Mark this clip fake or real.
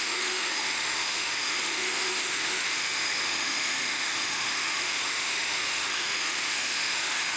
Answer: fake